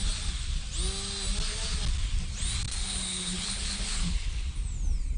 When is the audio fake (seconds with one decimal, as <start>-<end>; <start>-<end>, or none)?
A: 2.7-4.5